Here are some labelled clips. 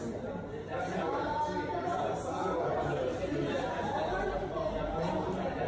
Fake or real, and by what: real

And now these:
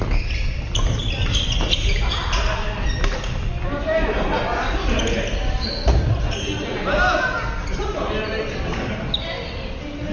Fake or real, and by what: real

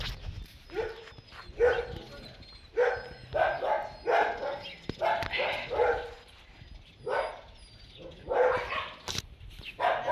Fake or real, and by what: real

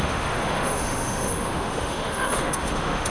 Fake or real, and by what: fake, autoencoder, DAC-VAE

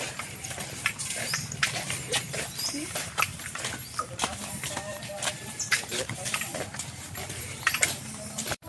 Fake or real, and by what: fake, vocoder, BigVGAN v2